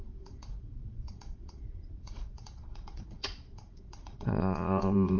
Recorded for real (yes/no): no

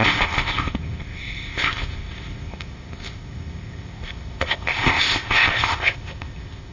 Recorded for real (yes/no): no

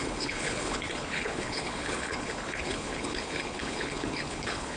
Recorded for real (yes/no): no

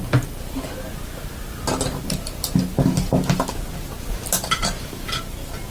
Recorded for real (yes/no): yes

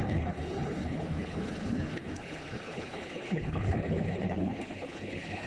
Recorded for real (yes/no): no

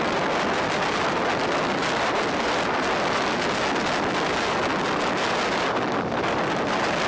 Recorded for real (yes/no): yes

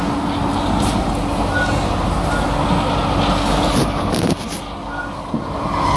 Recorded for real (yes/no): yes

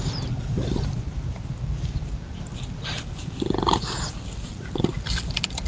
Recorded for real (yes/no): yes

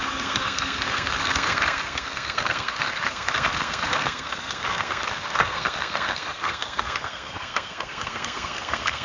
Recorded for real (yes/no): no